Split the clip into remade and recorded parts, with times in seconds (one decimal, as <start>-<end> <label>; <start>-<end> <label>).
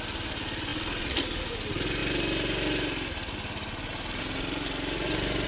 0.0-5.5 recorded